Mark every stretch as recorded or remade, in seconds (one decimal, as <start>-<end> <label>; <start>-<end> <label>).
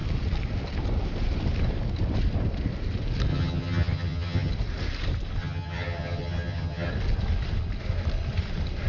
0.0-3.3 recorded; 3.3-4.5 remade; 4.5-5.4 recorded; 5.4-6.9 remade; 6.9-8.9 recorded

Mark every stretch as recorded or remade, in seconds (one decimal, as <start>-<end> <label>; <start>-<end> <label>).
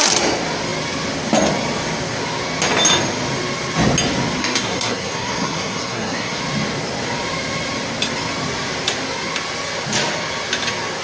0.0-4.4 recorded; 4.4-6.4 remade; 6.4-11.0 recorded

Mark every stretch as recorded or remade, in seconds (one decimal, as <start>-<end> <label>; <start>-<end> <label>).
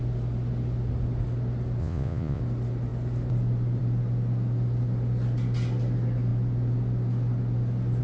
0.0-1.8 recorded; 1.8-2.4 remade; 2.4-8.0 recorded